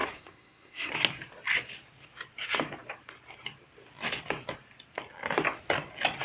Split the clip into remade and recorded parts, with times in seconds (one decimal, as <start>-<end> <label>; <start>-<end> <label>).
0.0-0.9 remade; 0.9-6.2 recorded